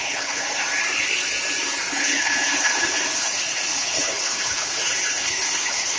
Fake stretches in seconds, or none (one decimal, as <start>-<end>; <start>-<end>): 0.0-0.4; 1.9-6.0